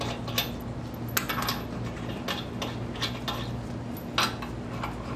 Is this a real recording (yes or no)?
yes